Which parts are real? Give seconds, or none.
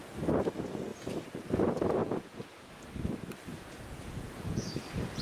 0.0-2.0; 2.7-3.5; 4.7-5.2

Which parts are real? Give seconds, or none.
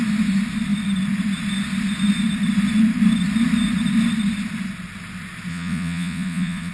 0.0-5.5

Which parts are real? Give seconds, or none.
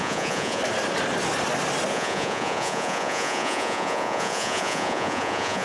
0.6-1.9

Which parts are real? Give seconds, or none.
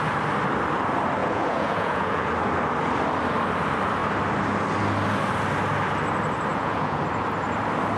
0.0-1.2; 2.3-6.5; 7.0-8.0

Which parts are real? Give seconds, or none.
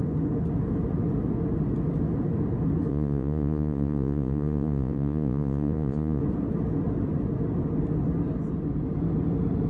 0.0-2.9; 6.2-9.7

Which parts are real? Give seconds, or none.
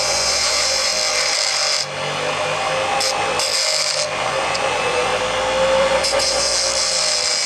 0.9-4.2; 5.1-5.8; 6.5-7.5